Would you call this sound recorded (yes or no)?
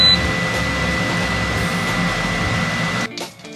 yes